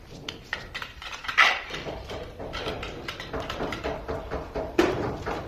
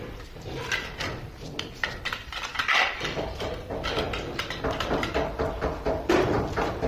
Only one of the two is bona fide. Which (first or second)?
second